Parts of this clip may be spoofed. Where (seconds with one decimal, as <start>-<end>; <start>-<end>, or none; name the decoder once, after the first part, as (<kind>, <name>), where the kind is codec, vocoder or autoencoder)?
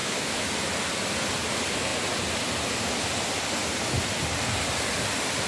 0.0-0.5 (autoencoder, DAC-VAE)